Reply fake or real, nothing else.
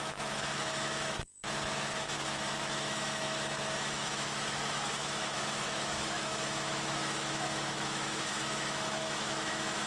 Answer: fake